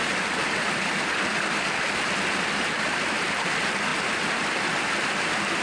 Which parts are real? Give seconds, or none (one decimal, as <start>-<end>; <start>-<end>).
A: 0.0-5.6